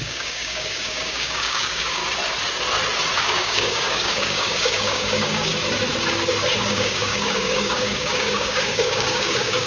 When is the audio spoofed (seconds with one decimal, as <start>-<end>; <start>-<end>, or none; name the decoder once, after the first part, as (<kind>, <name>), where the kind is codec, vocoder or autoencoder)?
0.0-2.0 (codec, DAC); 3.2-5.5; 6.7-9.7